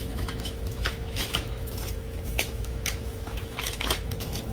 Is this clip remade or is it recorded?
remade